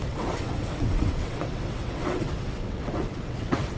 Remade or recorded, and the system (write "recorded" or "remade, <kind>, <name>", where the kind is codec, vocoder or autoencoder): remade, vocoder, WaveNeXt